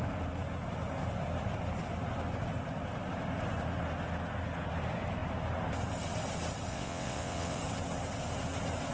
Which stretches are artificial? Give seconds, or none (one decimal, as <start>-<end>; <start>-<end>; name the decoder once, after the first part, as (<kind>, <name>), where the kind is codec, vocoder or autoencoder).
6.7-7.6 (vocoder, WaveNeXt)

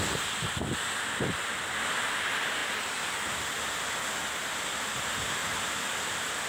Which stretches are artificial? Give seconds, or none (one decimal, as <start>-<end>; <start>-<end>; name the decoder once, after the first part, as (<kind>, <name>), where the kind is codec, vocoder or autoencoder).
none

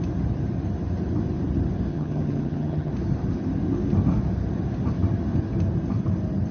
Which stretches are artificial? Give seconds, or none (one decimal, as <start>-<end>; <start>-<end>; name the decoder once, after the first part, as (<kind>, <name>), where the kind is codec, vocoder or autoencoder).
1.9-2.9 (vocoder, HiFi-GAN)

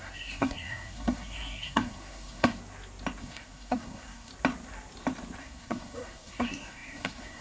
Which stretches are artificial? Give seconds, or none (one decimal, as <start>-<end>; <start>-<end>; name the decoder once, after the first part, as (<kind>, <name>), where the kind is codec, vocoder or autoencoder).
0.0-2.6 (codec, SNAC); 3.2-4.3; 5.4-7.4

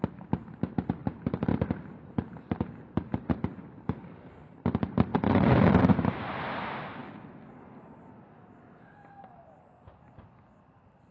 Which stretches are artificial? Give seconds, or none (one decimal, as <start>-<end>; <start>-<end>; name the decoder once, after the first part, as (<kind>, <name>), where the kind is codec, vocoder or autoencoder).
1.0-4.3 (vocoder, BigVGAN v2); 5.1-6.1

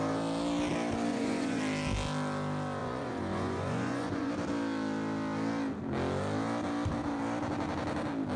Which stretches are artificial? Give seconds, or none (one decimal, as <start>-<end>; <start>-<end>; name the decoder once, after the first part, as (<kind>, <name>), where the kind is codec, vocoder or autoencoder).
1.1-1.6 (vocoder, Vocos); 2.8-4.3

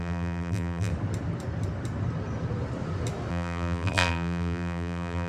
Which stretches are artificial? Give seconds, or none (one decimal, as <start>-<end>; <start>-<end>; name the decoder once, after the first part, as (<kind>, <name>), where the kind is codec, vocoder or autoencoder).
0.0-0.9 (vocoder, BigVGAN v2); 3.3-5.3

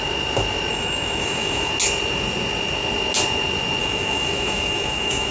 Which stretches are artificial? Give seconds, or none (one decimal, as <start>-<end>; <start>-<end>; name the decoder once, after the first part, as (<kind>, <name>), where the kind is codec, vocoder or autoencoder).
0.7-1.7 (autoencoder, DAC-VAE); 3.8-5.3